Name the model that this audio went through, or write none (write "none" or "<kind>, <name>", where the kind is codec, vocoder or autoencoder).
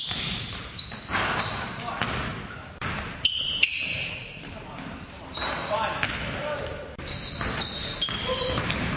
vocoder, BigVGAN v2